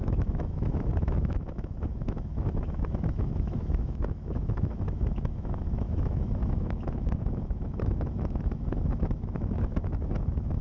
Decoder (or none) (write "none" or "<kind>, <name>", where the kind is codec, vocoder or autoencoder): autoencoder, DAC-VAE